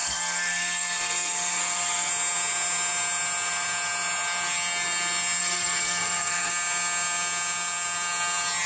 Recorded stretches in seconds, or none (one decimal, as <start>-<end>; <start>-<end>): 2.1-5.4; 6.5-8.7